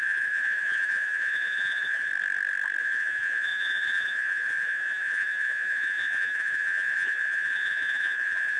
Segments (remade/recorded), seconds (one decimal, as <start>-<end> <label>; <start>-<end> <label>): 0.0-2.1 remade; 2.1-2.8 recorded; 2.8-8.6 remade